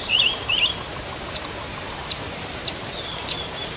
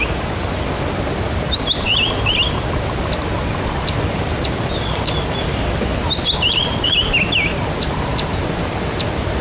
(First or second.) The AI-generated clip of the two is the first